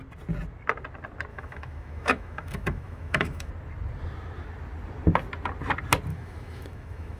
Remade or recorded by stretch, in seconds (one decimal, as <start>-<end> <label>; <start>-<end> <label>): 0.0-1.3 recorded; 1.3-3.5 remade; 3.5-6.1 recorded; 6.1-7.2 remade

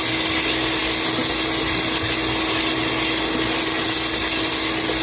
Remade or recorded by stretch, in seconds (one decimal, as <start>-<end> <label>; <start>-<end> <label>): 0.0-5.0 recorded

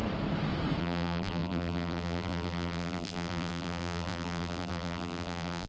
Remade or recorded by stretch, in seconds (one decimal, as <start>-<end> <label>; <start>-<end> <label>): 0.0-0.8 recorded; 0.8-5.7 remade

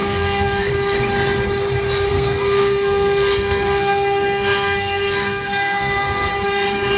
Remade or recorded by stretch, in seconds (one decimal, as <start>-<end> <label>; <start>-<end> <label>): 0.0-0.7 remade; 0.7-2.1 recorded; 2.1-6.3 remade; 6.3-7.0 recorded

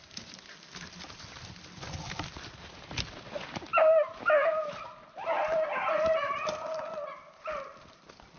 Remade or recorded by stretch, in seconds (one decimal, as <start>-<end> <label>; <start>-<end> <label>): 0.0-8.4 recorded